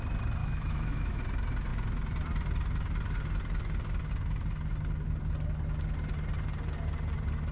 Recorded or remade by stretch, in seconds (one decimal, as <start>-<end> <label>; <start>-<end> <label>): 0.0-0.4 recorded; 0.4-1.2 remade; 1.2-7.5 recorded